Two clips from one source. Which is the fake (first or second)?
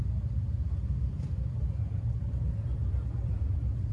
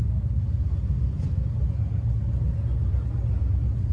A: first